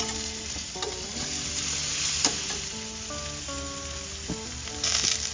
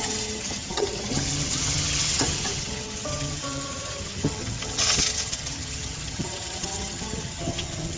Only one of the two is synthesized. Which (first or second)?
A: second